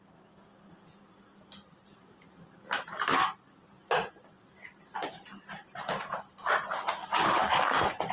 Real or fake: real